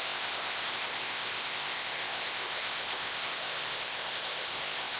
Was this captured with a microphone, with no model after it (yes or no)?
no